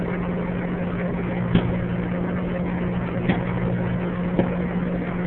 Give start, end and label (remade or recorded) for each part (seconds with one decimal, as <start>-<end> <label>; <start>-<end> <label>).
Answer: 0.0-5.3 recorded